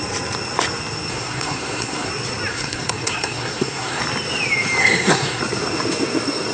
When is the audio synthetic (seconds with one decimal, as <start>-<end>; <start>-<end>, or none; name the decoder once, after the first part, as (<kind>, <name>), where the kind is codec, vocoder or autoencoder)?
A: 1.1-2.1 (codec, SNAC); 2.5-4.0; 4.8-5.4